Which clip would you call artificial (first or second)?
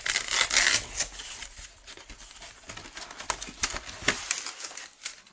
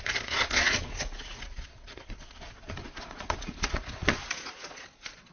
second